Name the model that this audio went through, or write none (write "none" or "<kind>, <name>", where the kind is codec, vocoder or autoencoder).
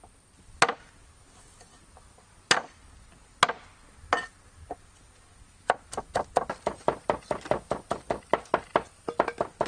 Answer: none